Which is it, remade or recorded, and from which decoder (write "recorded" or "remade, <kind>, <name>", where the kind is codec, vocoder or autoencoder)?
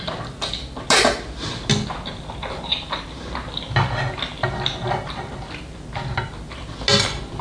recorded